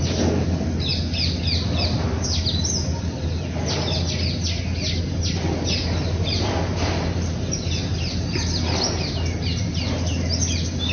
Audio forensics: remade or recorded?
recorded